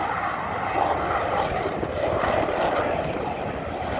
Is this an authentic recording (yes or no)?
yes